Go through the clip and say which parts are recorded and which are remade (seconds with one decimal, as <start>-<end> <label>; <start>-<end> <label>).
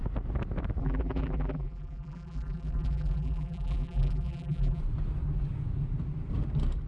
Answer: 0.0-0.8 recorded; 0.8-4.8 remade; 4.8-6.9 recorded